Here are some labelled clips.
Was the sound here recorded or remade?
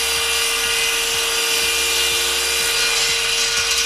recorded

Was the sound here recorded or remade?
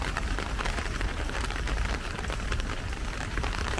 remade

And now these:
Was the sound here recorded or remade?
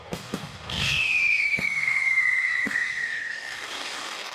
remade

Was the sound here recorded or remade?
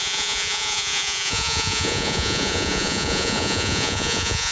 remade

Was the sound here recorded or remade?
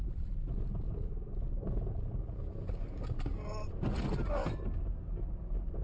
recorded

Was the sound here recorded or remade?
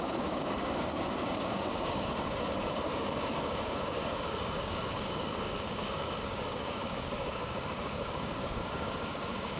remade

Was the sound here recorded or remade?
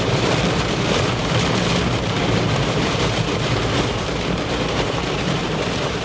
remade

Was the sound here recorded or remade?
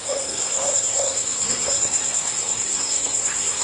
remade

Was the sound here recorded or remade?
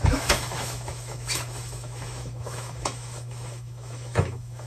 remade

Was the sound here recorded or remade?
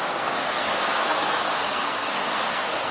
remade